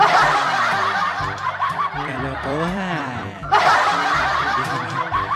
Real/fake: fake